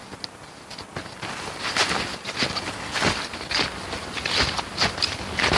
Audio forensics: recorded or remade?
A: recorded